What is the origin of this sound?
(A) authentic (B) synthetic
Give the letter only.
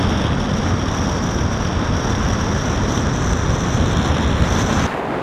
A